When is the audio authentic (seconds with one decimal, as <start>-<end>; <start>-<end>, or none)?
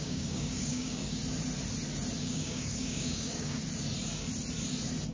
1.2-2.2; 3.6-5.1